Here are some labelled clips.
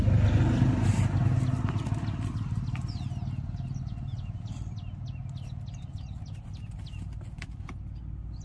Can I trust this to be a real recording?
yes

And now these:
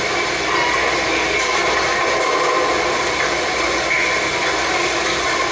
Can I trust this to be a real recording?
yes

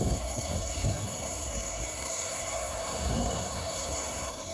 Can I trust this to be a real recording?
no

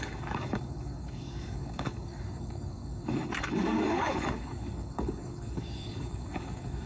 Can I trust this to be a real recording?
no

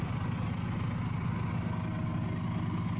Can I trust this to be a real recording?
yes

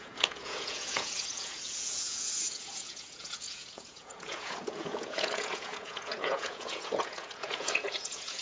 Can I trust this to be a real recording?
no